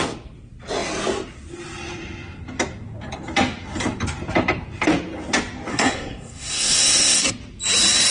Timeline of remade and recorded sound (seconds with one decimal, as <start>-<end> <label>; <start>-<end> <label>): 0.0-5.7 recorded; 5.7-7.3 remade; 7.3-8.1 recorded